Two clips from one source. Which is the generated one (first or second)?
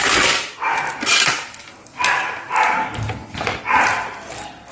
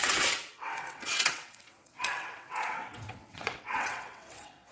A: second